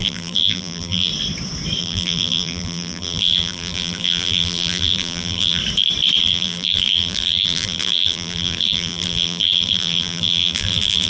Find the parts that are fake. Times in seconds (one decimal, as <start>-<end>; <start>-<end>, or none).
0.0-1.1; 1.8-5.6; 6.2-11.1